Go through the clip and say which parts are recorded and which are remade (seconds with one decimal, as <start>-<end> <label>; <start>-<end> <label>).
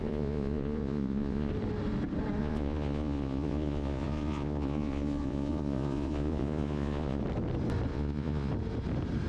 0.0-1.5 remade; 1.5-2.4 recorded; 2.4-7.2 remade; 7.2-7.9 recorded; 7.9-8.5 remade; 8.5-9.3 recorded